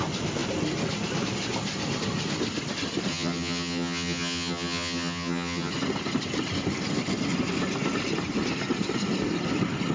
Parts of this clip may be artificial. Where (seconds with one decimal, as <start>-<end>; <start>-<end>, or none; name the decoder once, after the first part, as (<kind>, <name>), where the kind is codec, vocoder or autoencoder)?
3.1-5.7 (vocoder, HiFi-GAN)